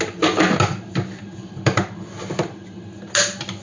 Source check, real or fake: real